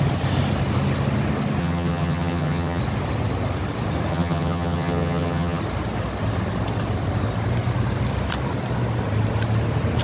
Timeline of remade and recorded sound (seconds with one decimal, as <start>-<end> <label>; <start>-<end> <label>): 0.0-1.6 recorded; 1.6-2.8 remade; 2.8-4.1 recorded; 4.1-5.6 remade; 5.6-10.0 recorded